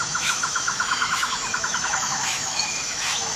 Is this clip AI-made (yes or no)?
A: yes